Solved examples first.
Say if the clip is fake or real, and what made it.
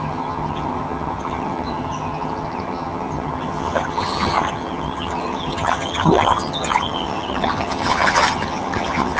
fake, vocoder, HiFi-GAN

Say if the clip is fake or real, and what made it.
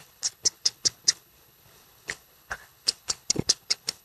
fake, codec, HILCodec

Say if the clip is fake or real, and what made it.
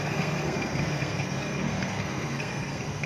fake, codec, SNAC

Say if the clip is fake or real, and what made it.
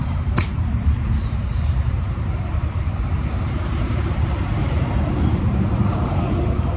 fake, vocoder, BigVGAN v2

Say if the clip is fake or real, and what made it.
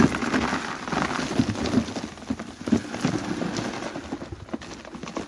real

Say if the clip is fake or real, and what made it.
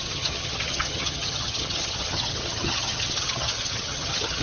fake, vocoder, HiFi-GAN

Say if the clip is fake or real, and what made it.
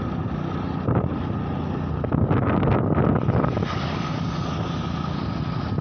real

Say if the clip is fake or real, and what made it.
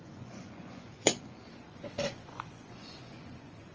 fake, vocoder, Vocos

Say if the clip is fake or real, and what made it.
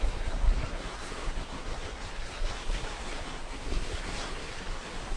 fake, codec, SNAC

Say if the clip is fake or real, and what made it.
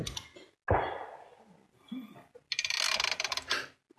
real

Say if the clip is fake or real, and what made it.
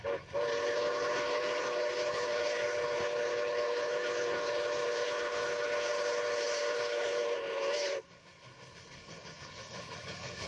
fake, codec, HILCodec